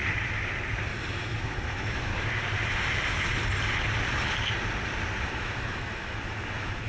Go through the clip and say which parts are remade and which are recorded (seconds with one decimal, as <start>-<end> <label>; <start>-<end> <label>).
0.0-1.1 recorded; 1.1-2.1 remade; 2.1-5.2 recorded; 5.2-6.9 remade